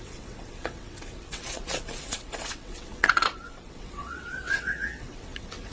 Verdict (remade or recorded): remade